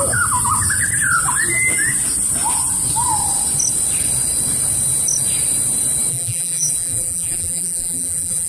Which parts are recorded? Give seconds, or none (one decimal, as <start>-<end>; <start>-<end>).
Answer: 0.0-6.1